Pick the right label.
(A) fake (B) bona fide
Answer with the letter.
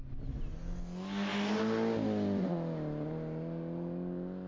B